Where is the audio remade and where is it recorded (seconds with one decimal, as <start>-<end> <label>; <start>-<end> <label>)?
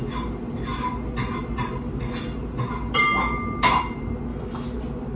0.0-4.3 recorded; 4.3-4.8 remade; 4.8-5.2 recorded